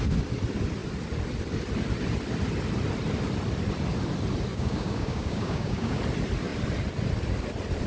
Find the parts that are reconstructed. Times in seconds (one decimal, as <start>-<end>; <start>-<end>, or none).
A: 4.5-6.0